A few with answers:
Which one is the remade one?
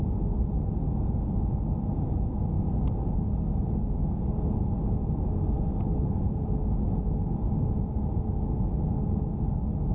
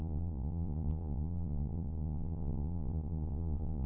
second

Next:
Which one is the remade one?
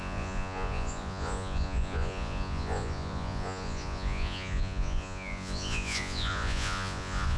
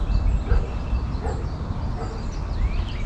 first